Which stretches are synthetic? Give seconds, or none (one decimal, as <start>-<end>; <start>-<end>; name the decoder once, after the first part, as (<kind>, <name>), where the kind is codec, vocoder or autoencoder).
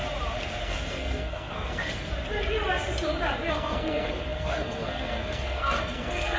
0.6-2.1 (codec, SNAC); 3.5-6.4